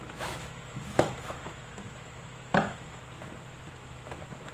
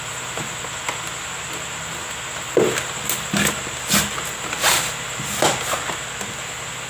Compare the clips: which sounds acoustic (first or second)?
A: second